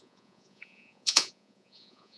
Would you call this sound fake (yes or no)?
yes